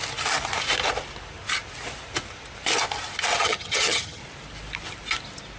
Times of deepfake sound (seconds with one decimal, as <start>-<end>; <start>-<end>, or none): 3.4-4.2